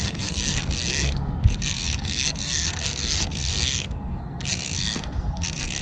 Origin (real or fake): fake